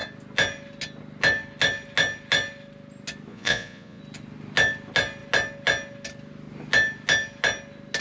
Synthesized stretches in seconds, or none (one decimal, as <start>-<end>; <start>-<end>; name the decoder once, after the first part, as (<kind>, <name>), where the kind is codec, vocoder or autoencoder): 3.3-4.0 (vocoder, Vocos)

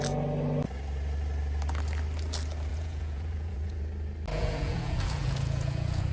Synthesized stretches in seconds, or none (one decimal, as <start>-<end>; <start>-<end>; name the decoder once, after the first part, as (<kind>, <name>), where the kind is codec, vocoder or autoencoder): 2.7-3.8 (vocoder, Vocos); 4.3-6.1

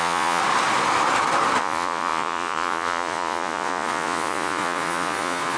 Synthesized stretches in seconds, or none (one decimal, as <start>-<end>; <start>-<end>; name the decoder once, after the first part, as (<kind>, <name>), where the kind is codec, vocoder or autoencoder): 0.0-0.4 (vocoder, Vocos); 1.6-5.6

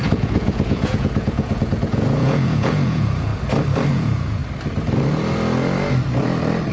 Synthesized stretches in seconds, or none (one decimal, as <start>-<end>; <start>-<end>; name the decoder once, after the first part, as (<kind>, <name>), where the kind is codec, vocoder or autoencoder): 0.0-3.3 (vocoder, Vocos); 3.9-4.4

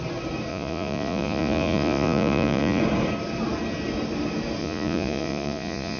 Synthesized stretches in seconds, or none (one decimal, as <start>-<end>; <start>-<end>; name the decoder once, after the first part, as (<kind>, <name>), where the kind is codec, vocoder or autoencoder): 0.5-2.8 (vocoder, Vocos); 4.6-6.0